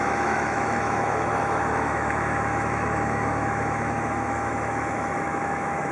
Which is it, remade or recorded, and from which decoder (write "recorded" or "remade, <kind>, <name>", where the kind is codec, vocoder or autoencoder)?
remade, autoencoder, DAC-VAE